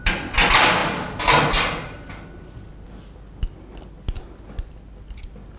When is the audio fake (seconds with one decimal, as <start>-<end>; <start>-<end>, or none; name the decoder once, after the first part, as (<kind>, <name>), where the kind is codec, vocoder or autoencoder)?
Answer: none

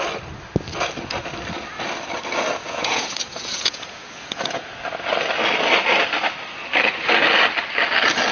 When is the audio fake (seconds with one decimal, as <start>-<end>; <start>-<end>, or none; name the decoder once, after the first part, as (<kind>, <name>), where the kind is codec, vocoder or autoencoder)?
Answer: 2.6-4.8 (vocoder, Vocos)

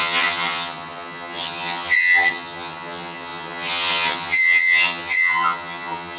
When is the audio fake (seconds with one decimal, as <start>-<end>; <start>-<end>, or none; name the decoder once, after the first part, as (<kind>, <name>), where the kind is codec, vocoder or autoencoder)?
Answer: 0.0-6.2 (vocoder, HiFi-GAN)

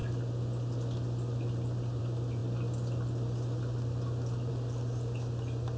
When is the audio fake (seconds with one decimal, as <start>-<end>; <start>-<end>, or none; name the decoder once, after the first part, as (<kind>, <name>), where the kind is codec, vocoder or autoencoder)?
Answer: none